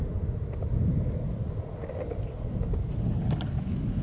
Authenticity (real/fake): real